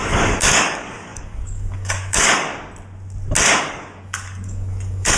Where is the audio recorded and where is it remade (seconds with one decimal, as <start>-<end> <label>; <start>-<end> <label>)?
0.0-2.5 remade; 2.5-3.6 recorded; 3.6-5.2 remade